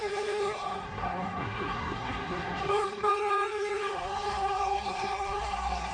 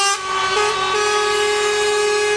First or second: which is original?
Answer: second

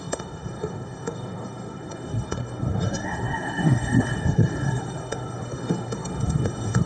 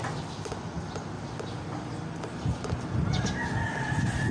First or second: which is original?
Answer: second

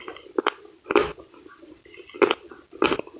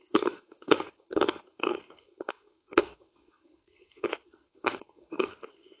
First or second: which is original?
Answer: first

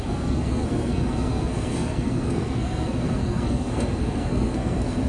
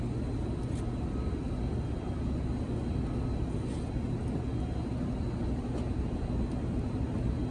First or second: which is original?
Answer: second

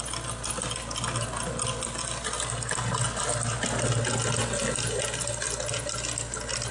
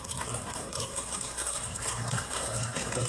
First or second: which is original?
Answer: first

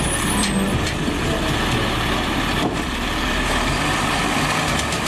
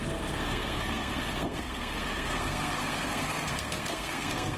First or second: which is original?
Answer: first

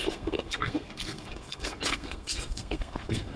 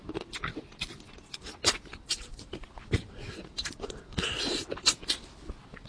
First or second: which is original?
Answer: second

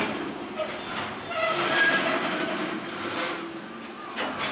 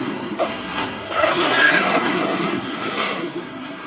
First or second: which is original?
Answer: first